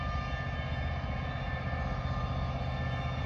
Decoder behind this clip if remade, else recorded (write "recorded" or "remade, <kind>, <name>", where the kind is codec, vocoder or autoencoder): recorded